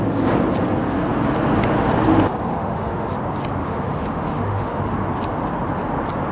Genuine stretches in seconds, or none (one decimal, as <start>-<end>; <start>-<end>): 0.0-2.5; 3.2-3.6; 4.8-6.3